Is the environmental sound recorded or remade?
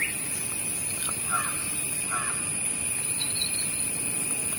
recorded